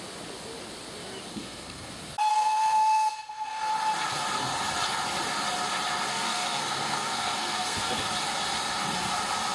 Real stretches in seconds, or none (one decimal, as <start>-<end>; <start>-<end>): 0.0-1.3; 1.9-2.3; 3.7-6.1; 8.0-9.5